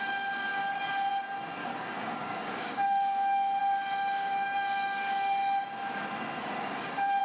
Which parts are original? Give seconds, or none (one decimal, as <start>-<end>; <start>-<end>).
0.0-1.6; 3.6-6.4